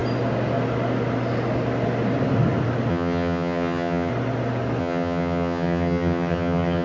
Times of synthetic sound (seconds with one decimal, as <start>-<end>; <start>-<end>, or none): 2.9-4.1; 4.8-6.8